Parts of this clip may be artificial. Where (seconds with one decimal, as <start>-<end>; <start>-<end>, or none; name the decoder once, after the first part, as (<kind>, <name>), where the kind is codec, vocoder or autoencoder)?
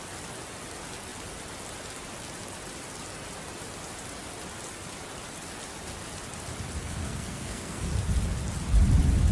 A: 6.8-7.9 (codec, SNAC)